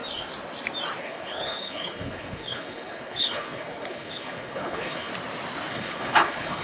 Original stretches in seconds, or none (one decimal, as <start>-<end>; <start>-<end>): 0.0-1.0; 5.1-5.7